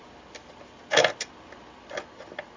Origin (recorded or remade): recorded